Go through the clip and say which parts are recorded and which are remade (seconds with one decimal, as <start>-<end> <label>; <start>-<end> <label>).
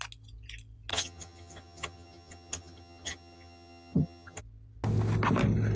0.0-0.9 recorded; 0.9-4.4 remade; 4.4-5.8 recorded